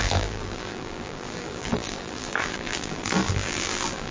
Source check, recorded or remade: remade